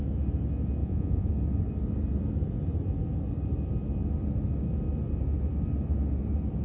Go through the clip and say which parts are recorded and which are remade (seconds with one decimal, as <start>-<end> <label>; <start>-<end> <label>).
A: 0.0-0.8 recorded; 0.8-1.3 remade; 1.3-6.6 recorded